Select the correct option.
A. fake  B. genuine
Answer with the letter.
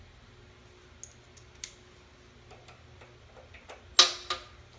B